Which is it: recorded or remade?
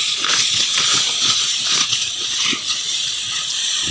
remade